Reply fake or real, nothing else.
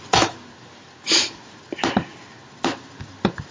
real